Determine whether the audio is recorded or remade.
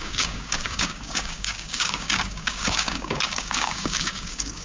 remade